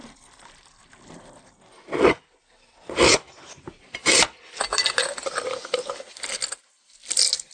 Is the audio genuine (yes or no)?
yes